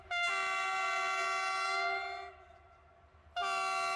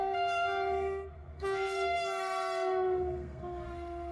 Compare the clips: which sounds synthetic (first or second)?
second